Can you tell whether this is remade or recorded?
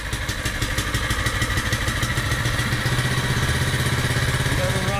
recorded